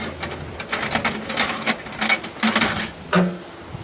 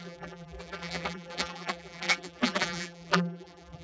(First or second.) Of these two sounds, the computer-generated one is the second